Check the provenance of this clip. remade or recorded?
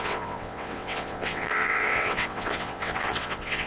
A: remade